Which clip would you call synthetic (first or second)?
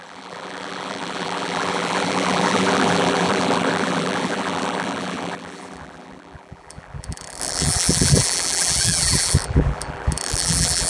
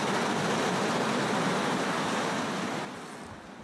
first